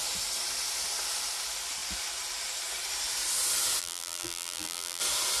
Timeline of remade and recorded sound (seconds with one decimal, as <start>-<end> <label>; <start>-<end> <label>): 0.0-3.8 recorded; 3.8-5.0 remade; 5.0-5.4 recorded